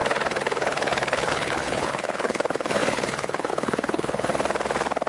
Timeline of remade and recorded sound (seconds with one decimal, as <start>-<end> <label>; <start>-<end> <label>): 0.0-4.3 remade; 4.3-5.1 recorded